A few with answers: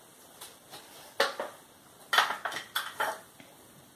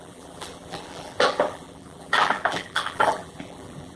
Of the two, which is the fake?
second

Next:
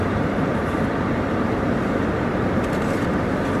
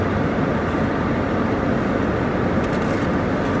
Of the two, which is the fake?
first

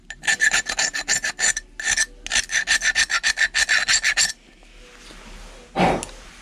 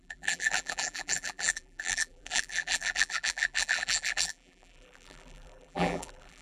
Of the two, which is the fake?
second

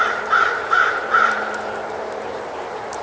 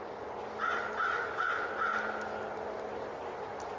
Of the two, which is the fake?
first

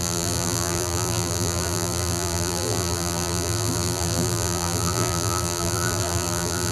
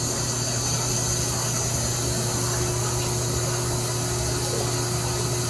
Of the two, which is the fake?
first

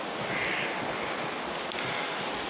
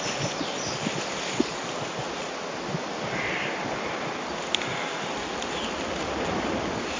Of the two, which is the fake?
second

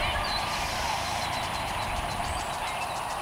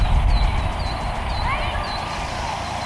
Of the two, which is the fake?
first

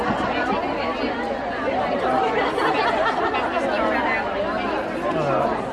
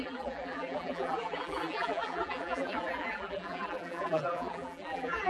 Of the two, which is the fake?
second